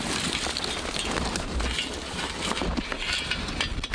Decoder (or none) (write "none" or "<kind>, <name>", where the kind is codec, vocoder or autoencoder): none